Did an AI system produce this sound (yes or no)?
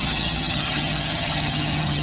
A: yes